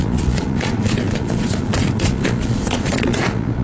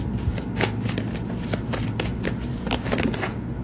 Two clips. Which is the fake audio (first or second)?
first